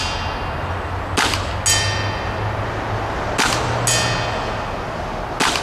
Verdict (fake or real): real